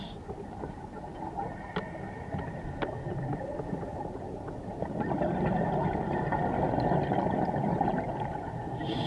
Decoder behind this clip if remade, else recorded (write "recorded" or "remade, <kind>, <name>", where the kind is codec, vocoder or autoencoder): recorded